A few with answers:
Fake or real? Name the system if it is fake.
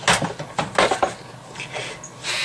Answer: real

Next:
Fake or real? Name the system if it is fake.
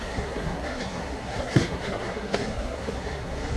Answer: fake, codec, SNAC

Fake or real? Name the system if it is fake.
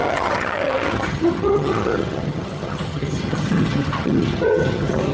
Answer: fake, vocoder, HiFi-GAN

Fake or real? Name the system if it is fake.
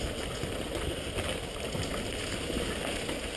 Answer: real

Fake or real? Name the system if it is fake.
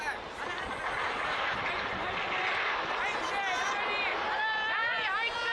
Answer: real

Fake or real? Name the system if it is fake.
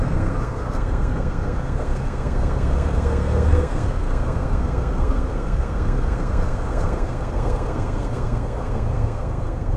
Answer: fake, codec, SNAC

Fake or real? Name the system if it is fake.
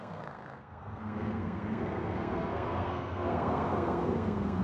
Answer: fake, codec, SNAC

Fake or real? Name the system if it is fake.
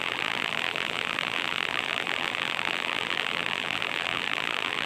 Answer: fake, vocoder, BigVGAN v2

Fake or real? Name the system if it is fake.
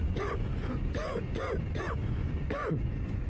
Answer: fake, vocoder, Vocos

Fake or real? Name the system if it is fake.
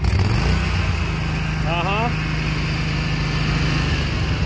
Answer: real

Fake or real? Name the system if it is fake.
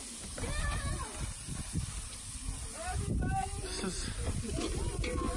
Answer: real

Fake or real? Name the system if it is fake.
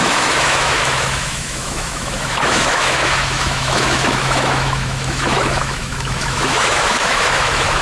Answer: fake, autoencoder, DAC-VAE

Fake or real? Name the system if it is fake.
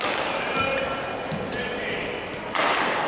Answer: real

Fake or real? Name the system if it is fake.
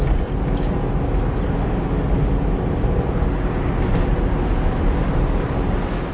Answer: real